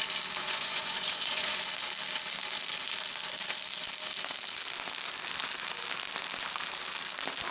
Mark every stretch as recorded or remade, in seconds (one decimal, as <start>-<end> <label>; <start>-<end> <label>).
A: 0.0-0.4 recorded; 0.4-1.6 remade; 1.6-7.5 recorded